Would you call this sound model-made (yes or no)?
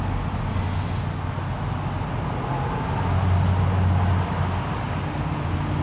no